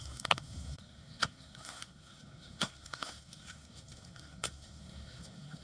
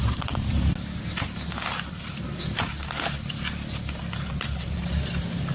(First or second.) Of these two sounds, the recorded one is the second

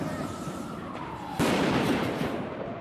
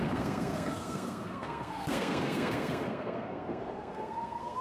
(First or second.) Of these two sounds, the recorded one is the first